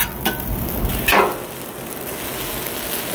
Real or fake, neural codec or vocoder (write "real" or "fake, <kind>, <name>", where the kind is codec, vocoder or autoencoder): real